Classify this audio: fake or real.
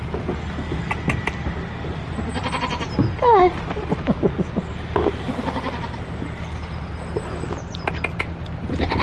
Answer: real